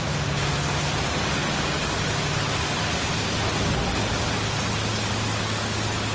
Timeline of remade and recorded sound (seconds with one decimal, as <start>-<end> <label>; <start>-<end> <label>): 0.0-6.1 recorded

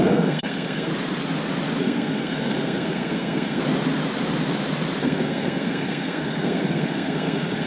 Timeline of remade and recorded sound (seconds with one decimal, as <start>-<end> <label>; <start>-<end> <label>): 0.0-0.9 remade; 0.9-1.8 recorded; 1.8-3.6 remade; 3.6-5.0 recorded; 5.0-7.7 remade

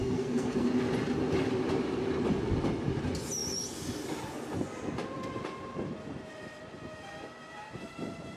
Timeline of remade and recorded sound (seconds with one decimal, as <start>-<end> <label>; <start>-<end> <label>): 0.0-0.7 remade; 0.7-8.4 recorded